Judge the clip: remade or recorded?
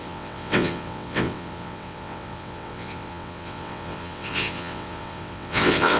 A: remade